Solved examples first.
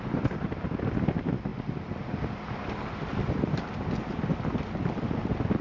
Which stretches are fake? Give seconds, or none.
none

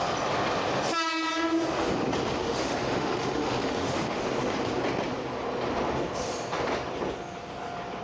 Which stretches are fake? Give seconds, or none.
2.4-4.2 (autoencoder, DAC-VAE)

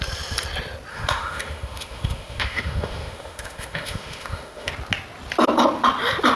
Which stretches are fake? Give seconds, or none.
0.9-4.7 (autoencoder, DAC-VAE)

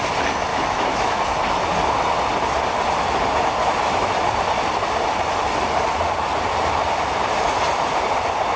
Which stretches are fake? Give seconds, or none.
0.5-1.2 (autoencoder, DAC-VAE)

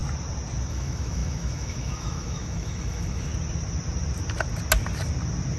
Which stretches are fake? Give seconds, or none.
0.7-3.3 (autoencoder, DAC-VAE)